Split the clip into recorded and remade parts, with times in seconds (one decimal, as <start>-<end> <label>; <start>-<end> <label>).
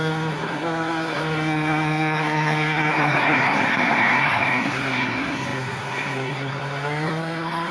0.0-7.7 remade